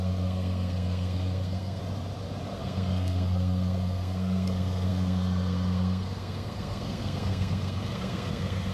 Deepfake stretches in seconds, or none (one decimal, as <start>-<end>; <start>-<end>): 0.0-1.8; 2.5-8.7